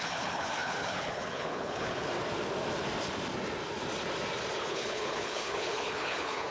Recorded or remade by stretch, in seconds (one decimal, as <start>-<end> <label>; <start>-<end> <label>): 0.0-2.1 remade; 2.1-4.6 recorded; 4.6-6.5 remade